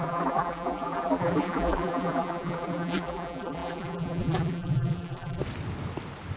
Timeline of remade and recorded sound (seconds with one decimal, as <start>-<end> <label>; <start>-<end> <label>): 0.0-5.4 remade; 5.4-6.4 recorded